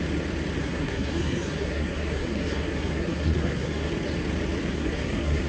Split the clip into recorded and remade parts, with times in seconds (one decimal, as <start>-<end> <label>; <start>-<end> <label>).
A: 0.0-0.6 recorded; 0.6-3.9 remade; 3.9-4.7 recorded; 4.7-5.5 remade